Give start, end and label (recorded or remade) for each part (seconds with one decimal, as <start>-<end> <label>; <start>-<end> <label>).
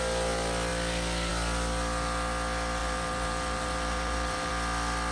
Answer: 0.0-2.8 recorded; 2.8-4.5 remade; 4.5-5.1 recorded